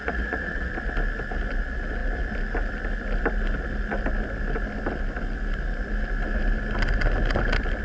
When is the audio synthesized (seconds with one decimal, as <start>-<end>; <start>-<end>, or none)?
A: 0.0-0.7